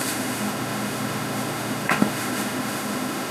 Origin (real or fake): fake